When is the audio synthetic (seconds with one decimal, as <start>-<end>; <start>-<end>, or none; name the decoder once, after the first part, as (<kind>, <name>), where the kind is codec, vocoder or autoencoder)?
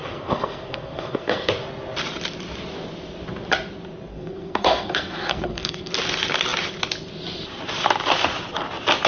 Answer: 0.0-1.5 (codec, SNAC); 4.1-5.9